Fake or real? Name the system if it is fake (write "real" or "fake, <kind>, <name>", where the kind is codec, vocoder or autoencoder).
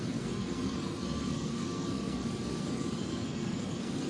fake, codec, SNAC